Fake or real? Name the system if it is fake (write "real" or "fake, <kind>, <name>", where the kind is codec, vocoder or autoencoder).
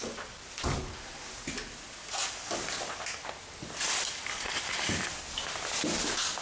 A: real